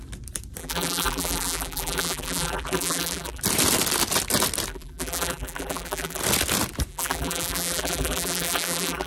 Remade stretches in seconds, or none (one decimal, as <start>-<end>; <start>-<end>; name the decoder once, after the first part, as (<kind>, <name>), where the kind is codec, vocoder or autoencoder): 0.6-3.4 (vocoder, BigVGAN v2); 4.7-6.2; 6.9-9.1